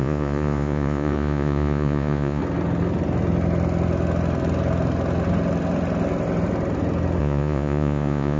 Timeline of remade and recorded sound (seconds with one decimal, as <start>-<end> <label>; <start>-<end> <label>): 0.0-2.4 remade; 2.4-7.2 recorded; 7.2-8.4 remade